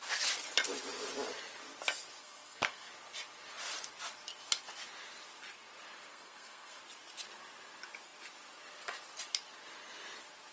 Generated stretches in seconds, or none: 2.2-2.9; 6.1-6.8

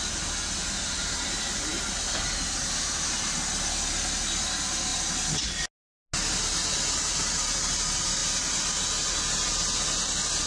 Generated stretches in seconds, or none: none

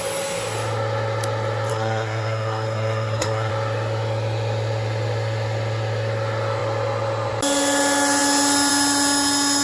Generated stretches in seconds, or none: 1.7-3.5

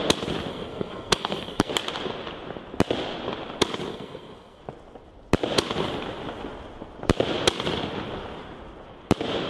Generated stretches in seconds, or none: 0.5-1.7; 3.9-4.6